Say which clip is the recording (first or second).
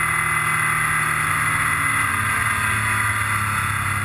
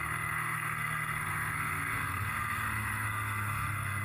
first